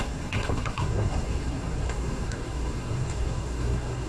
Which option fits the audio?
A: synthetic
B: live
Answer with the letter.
A